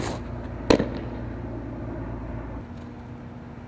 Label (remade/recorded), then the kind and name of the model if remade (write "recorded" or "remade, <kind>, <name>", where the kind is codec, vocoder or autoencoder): recorded